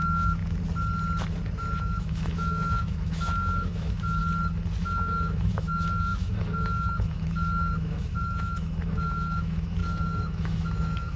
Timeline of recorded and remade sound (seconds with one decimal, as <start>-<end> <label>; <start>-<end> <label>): 0.0-0.4 remade; 0.4-1.8 recorded; 1.8-4.2 remade; 4.2-4.8 recorded; 4.8-11.2 remade